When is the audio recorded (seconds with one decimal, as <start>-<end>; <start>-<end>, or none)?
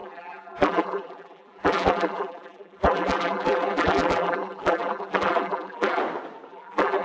6.0-6.5